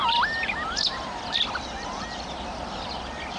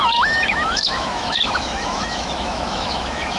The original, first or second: first